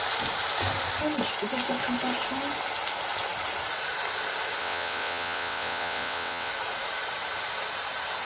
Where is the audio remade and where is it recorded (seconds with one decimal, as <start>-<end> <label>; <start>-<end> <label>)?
0.0-4.6 recorded; 4.6-6.5 remade; 6.5-8.2 recorded